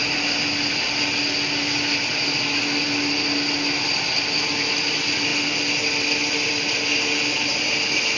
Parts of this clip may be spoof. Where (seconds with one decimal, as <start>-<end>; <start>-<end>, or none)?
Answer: none